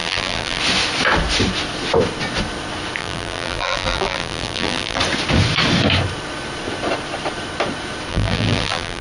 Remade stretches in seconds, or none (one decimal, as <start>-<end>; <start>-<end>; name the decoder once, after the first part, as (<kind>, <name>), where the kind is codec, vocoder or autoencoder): 0.0-0.6 (vocoder, BigVGAN v2); 3.0-5.0; 8.1-9.0